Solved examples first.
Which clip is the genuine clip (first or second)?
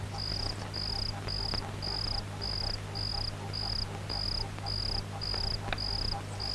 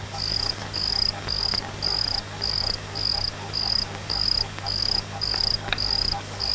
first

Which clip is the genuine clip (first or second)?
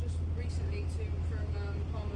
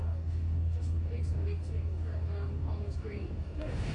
first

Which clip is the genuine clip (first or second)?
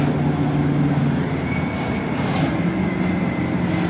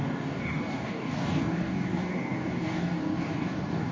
first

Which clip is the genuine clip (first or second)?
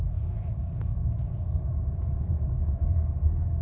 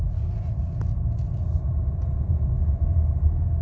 second